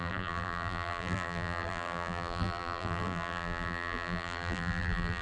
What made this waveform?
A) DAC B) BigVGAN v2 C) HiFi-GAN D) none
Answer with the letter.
B